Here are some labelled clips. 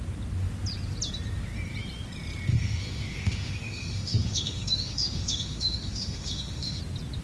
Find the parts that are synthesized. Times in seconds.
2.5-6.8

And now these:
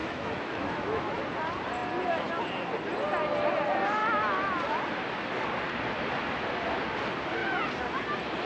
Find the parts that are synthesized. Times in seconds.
0.0-1.2

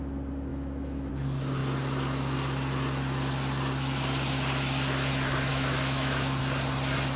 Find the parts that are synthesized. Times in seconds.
0.5-1.1; 5.5-6.4

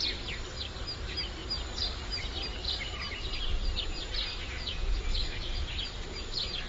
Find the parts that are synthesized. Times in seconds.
4.3-5.6

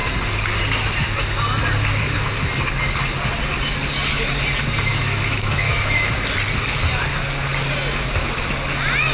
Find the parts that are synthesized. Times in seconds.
4.9-6.1